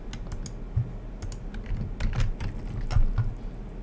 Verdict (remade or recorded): recorded